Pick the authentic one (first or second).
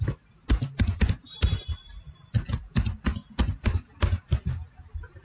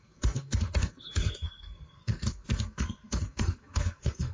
first